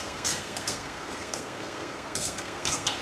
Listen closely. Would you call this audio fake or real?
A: fake